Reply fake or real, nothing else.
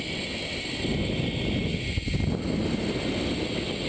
real